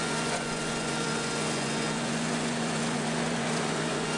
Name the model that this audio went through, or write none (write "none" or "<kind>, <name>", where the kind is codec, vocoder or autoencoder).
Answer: vocoder, Vocos